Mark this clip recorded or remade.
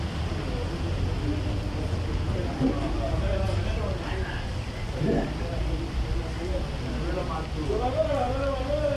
recorded